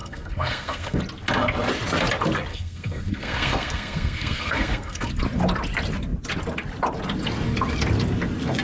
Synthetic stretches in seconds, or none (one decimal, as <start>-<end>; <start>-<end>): 0.0-1.0; 2.5-5.1